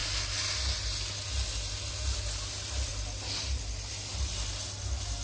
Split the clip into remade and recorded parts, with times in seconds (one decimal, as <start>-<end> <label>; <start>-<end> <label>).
0.0-5.2 recorded